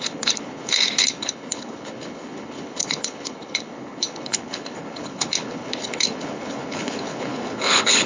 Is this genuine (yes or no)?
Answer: no